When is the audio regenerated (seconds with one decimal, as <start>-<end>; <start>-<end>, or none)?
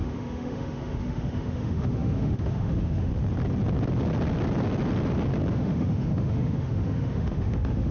0.0-3.1; 5.5-7.9